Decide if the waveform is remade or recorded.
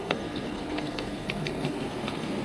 remade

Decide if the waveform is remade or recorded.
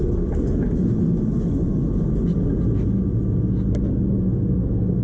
recorded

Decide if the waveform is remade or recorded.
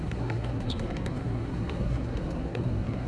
remade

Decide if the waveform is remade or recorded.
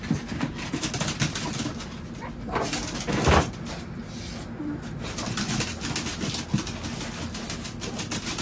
recorded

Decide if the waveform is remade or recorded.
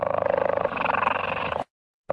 recorded